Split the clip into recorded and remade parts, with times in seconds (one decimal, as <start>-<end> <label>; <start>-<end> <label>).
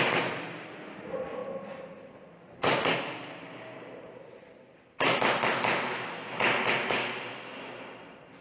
0.0-8.4 recorded